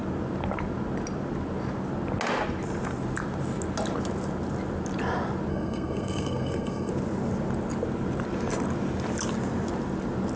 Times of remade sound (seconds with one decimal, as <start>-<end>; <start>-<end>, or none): 5.5-6.9